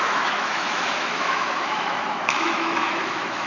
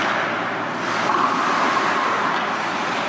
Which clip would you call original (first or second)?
second